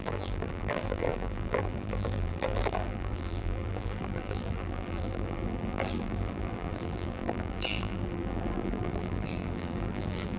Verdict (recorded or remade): remade